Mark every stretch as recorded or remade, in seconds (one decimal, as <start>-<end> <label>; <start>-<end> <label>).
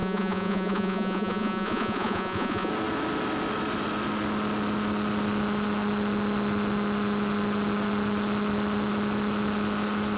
0.0-2.7 remade; 2.7-10.2 recorded